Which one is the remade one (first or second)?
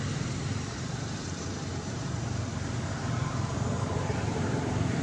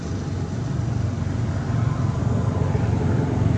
first